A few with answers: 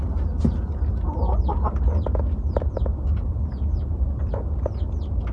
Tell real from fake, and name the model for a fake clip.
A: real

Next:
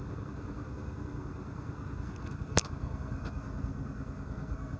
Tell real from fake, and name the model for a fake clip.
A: fake, codec, SNAC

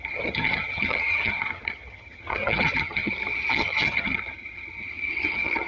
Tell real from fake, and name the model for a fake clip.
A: fake, vocoder, HiFi-GAN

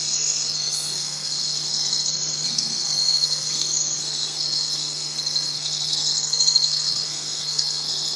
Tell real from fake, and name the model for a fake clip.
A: fake, codec, SNAC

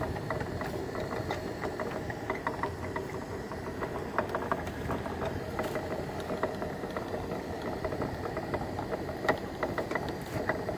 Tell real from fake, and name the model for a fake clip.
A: fake, vocoder, BigVGAN v2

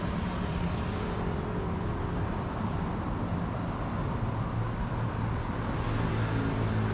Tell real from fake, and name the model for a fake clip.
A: real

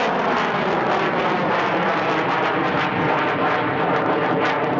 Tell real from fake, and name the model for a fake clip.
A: real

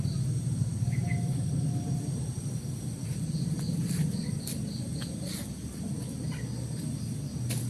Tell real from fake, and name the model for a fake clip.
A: real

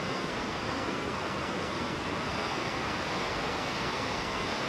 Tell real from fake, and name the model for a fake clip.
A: fake, codec, SNAC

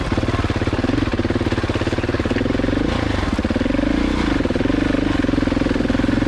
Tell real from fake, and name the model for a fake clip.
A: real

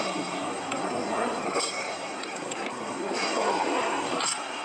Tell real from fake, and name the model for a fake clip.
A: fake, codec, SNAC